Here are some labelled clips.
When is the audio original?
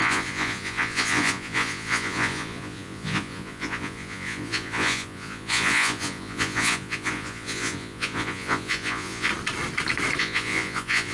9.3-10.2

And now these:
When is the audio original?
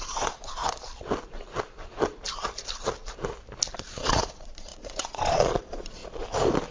0.6-4.0; 6.0-6.7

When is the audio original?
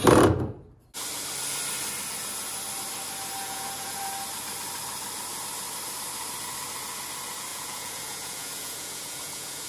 0.0-3.4; 4.0-7.5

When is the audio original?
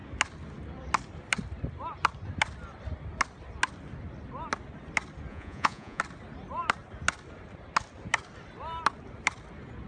0.0-5.3; 6.0-9.9